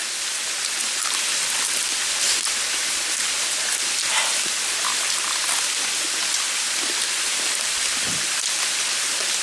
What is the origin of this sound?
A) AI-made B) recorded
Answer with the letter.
B